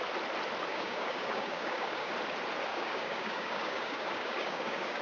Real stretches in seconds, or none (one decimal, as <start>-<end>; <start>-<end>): 0.0-0.7; 2.1-2.7